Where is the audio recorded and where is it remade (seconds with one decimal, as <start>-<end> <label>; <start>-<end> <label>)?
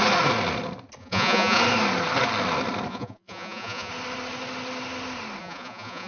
0.0-1.0 recorded; 1.0-1.6 remade; 1.6-2.9 recorded; 2.9-3.9 remade; 3.9-5.4 recorded; 5.4-6.1 remade